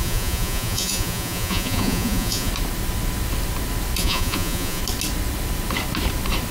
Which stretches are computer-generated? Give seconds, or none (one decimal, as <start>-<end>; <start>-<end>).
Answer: 0.0-2.5; 4.0-4.8